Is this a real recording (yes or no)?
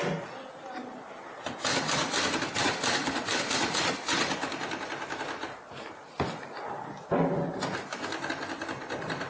yes